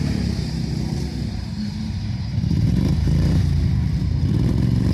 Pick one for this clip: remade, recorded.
remade